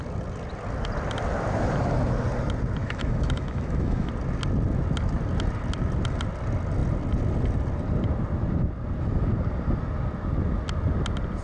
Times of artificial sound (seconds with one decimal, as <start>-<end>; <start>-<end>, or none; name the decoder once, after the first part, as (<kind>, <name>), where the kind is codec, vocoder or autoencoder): 2.8-4.1 (autoencoder, DAC-VAE)